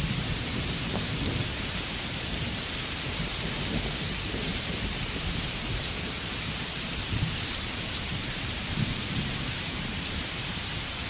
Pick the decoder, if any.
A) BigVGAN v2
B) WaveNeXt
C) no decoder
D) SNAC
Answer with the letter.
A